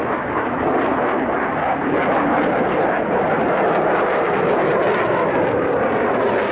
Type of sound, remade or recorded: recorded